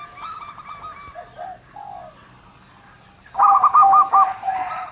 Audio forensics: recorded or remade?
recorded